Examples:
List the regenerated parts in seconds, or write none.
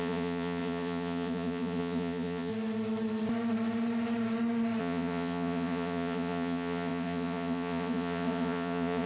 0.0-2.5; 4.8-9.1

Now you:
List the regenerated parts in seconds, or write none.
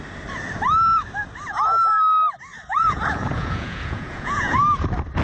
2.7-4.6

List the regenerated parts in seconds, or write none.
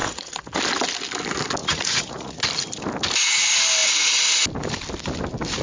0.0-0.6; 1.6-2.4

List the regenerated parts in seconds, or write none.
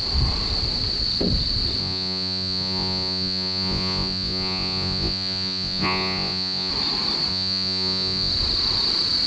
1.8-6.7; 7.3-8.3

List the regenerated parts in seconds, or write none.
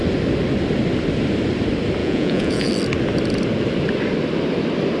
2.0-2.7